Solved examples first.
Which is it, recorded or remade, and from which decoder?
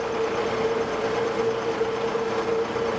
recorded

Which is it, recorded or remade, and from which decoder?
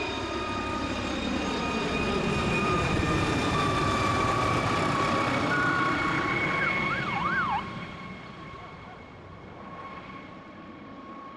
remade, vocoder, BigVGAN v2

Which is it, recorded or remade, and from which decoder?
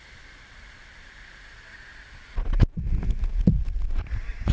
recorded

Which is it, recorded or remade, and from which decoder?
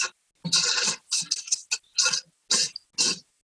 recorded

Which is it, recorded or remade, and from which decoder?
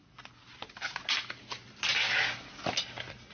recorded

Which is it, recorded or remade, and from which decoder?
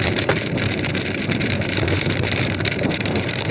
remade, vocoder, BigVGAN v2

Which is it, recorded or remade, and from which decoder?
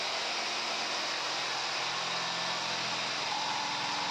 recorded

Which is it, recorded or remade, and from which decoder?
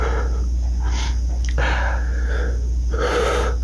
recorded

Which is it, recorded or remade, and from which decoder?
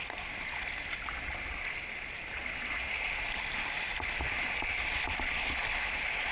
recorded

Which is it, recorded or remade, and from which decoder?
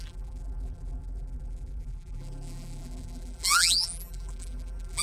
remade, vocoder, BigVGAN v2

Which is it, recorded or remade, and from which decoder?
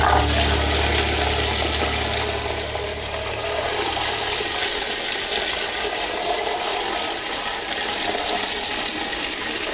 recorded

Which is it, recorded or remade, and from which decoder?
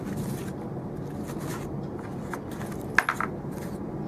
recorded